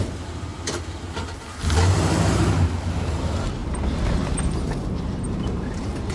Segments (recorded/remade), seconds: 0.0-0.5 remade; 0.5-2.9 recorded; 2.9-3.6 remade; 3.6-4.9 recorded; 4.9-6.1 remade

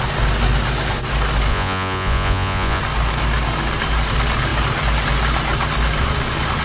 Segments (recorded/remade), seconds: 0.0-1.5 recorded; 1.5-2.8 remade; 2.8-6.6 recorded